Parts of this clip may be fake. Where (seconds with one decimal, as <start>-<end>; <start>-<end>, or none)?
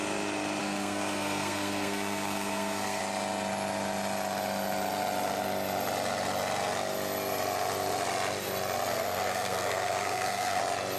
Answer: 0.6-3.0; 8.9-10.6